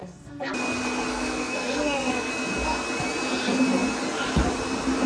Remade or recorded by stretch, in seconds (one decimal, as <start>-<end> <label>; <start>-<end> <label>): 0.0-0.5 remade; 0.5-1.1 recorded; 1.1-2.3 remade; 2.3-5.1 recorded